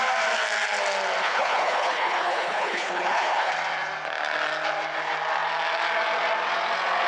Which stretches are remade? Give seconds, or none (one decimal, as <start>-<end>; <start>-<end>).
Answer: 1.2-3.5